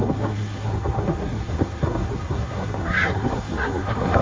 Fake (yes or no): yes